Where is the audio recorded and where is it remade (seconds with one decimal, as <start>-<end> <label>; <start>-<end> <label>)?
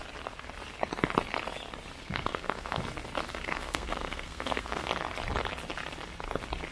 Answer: 0.0-2.0 recorded; 2.0-2.8 remade; 2.8-3.3 recorded; 3.3-4.9 remade; 4.9-6.7 recorded